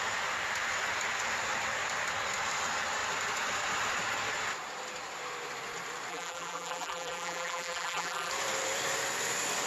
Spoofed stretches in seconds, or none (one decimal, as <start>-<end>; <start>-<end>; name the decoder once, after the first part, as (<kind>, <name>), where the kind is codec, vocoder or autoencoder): 6.1-8.3 (vocoder, BigVGAN v2)